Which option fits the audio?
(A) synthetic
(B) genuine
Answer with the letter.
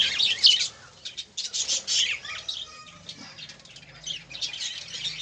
B